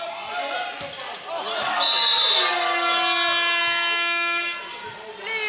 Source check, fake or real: real